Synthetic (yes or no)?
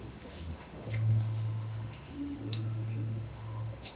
yes